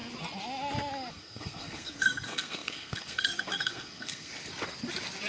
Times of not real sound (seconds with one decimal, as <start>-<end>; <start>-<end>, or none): 1.1-4.3